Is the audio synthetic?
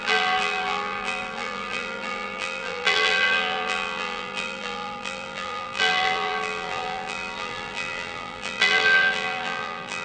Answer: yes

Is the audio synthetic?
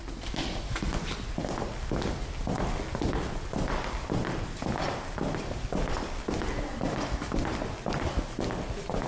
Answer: no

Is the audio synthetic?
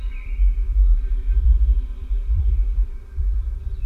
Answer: yes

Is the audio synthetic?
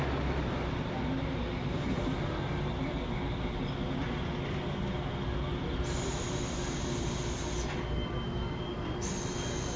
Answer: no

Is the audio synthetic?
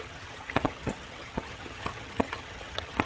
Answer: yes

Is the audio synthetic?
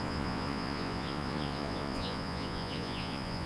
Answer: yes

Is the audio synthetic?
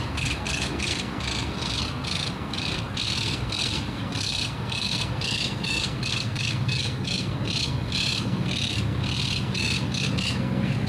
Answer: yes